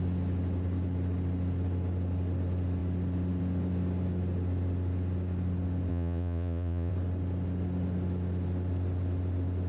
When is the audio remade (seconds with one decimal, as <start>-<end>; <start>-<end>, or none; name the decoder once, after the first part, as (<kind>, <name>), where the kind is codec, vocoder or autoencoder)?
5.9-6.9 (vocoder, Vocos)